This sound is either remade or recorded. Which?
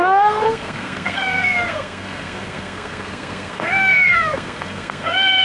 remade